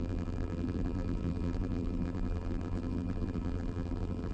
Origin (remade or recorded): remade